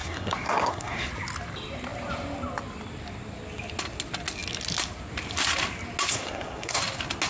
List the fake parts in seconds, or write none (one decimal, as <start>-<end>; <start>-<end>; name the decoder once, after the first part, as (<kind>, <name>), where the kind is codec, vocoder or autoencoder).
0.0-1.1 (codec, SNAC); 6.1-6.8

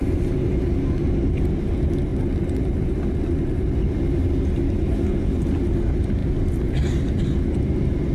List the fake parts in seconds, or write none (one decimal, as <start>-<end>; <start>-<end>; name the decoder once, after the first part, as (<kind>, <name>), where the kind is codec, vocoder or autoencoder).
none

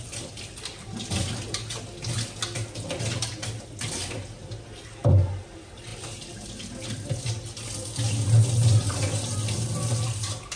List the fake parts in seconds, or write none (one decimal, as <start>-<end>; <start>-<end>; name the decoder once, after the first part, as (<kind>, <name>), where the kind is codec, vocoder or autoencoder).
none

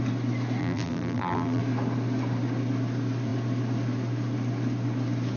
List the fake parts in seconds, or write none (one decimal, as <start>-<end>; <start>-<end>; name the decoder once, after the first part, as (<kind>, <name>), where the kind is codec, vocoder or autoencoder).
0.6-1.6 (vocoder, BigVGAN v2)